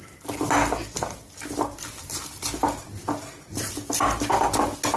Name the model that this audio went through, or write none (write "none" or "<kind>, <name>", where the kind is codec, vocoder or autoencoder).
none